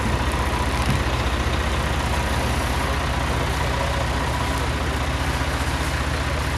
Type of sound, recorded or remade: recorded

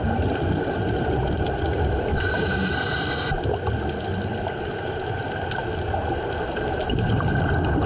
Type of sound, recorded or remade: recorded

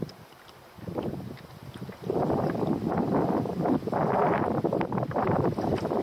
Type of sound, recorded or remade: recorded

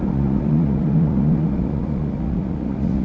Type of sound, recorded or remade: remade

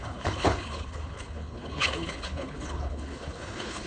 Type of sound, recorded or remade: remade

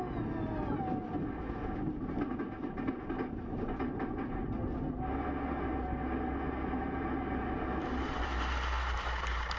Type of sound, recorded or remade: recorded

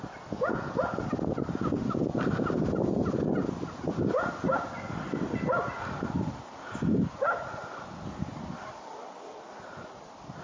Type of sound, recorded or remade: recorded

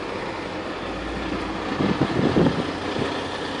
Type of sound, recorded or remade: recorded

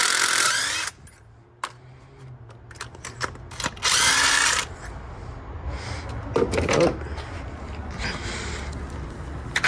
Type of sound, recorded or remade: recorded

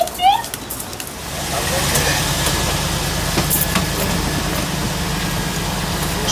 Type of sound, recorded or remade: recorded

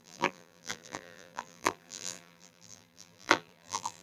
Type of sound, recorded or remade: remade